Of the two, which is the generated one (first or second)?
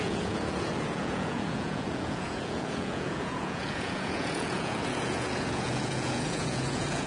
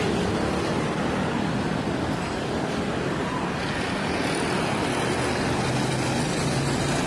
first